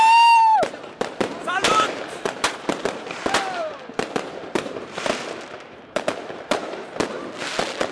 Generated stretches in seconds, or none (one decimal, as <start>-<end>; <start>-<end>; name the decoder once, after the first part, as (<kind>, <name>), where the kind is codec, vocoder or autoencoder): 0.0-6.6 (vocoder, BigVGAN v2)